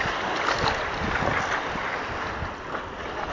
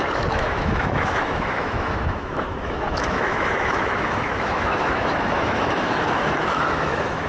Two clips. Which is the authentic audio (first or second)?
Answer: first